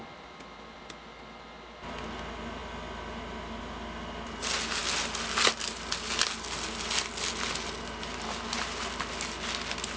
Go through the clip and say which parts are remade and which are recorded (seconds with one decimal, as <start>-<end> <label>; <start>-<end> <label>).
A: 0.0-10.0 recorded